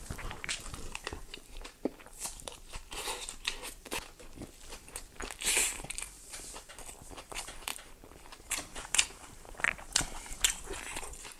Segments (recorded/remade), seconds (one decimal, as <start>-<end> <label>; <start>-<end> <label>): 0.0-2.8 remade; 2.8-4.6 recorded; 4.6-6.7 remade; 6.7-7.2 recorded; 7.2-11.4 remade